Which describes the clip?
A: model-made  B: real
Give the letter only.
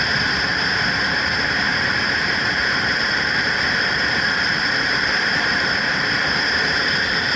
A